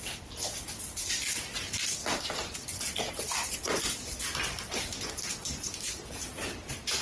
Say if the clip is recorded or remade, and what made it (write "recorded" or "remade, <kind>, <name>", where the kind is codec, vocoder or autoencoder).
recorded